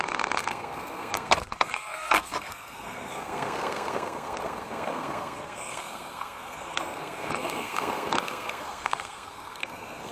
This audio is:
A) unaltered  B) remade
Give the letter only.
B